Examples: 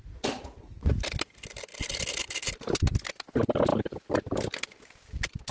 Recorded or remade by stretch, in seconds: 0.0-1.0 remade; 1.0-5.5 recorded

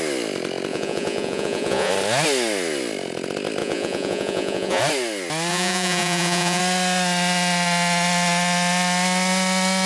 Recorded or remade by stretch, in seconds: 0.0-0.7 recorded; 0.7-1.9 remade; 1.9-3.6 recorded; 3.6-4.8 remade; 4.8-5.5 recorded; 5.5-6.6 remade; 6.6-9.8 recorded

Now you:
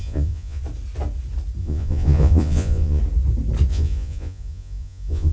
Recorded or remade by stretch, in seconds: 0.0-0.6 remade; 0.6-1.6 recorded; 1.6-3.0 remade; 3.0-3.7 recorded; 3.7-5.3 remade

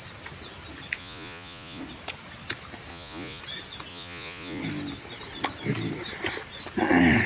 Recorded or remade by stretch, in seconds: 0.0-1.0 recorded; 1.0-1.8 remade; 1.8-2.9 recorded; 2.9-3.4 remade; 3.4-3.9 recorded; 3.9-4.6 remade; 4.6-7.3 recorded

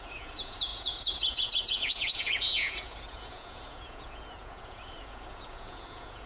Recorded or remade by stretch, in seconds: 0.0-6.3 remade

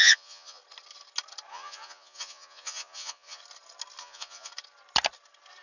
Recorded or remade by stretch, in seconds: 0.0-0.6 remade; 0.6-1.5 recorded; 1.5-3.4 remade; 3.4-4.0 recorded; 4.0-4.5 remade; 4.5-5.6 recorded

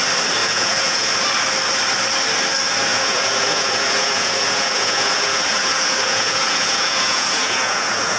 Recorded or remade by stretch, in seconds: 0.0-0.4 recorded; 0.4-1.1 remade; 1.1-2.9 recorded; 2.9-8.2 remade